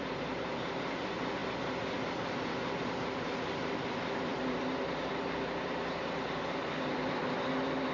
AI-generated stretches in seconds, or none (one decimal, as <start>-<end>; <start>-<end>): 0.0-1.4; 2.1-7.9